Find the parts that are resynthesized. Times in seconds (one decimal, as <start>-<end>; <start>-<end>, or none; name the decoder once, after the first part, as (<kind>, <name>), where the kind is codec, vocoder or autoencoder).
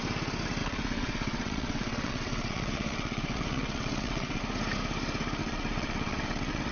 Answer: 0.6-4.4 (vocoder, WaveNeXt); 5.4-6.7